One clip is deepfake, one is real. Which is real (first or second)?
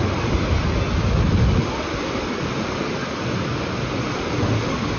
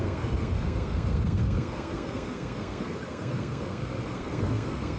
first